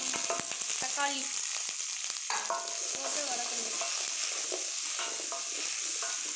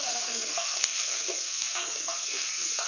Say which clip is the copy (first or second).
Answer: second